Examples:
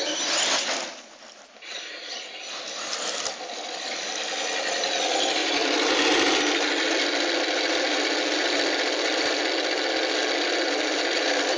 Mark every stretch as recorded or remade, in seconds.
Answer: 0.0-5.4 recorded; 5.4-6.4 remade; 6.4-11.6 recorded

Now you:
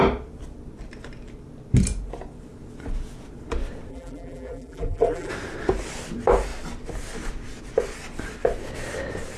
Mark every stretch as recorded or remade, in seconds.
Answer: 0.0-3.9 recorded; 3.9-5.3 remade; 5.3-9.4 recorded

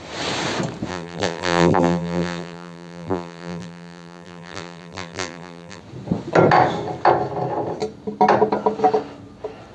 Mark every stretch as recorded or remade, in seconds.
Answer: 0.0-0.9 recorded; 0.9-5.8 remade; 5.8-9.7 recorded

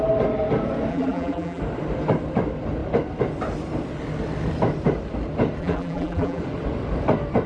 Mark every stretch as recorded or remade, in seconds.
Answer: 0.0-0.9 recorded; 0.9-1.6 remade; 1.6-5.6 recorded; 5.6-6.4 remade; 6.4-7.5 recorded